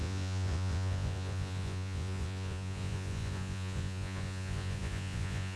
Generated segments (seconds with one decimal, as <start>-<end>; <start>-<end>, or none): 0.0-5.6